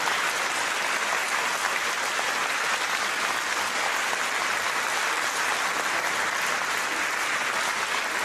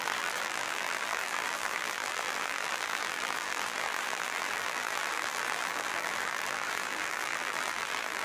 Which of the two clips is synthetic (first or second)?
second